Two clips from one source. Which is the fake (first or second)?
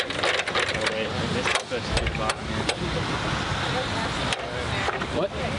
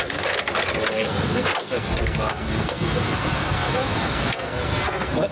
second